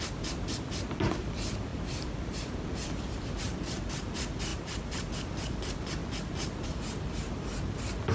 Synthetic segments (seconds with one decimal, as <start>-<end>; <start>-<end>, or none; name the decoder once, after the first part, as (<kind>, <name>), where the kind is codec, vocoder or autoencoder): 1.7-3.8 (vocoder, BigVGAN v2); 4.5-5.1